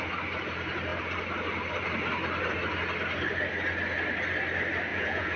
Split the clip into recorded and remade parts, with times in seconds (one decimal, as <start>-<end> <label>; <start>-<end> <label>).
0.0-4.9 recorded; 4.9-5.4 remade